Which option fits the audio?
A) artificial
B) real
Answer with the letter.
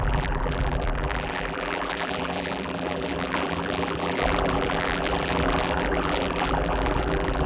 A